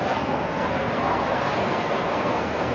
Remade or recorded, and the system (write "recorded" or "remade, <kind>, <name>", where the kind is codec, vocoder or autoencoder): remade, codec, SNAC